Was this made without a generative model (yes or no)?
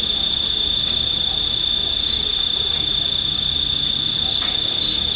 yes